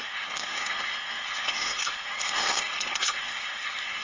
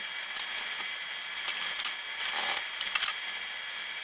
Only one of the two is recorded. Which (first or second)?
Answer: second